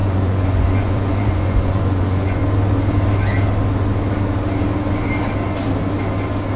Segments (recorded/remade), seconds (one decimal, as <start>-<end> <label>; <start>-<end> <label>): 0.0-2.4 remade; 2.4-6.6 recorded